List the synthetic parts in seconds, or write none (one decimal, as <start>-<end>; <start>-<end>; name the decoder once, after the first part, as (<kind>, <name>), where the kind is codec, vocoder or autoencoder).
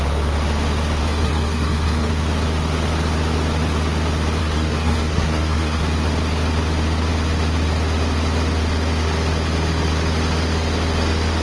1.0-2.1 (codec, SNAC); 4.4-5.8